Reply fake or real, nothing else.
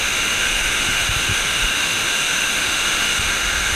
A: fake